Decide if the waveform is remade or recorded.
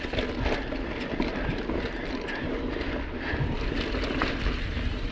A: recorded